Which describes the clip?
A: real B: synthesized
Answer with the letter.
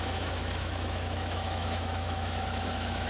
B